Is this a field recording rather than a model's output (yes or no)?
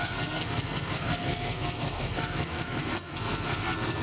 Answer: no